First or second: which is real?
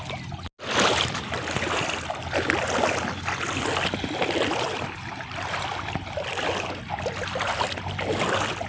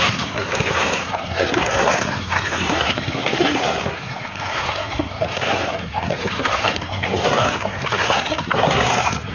first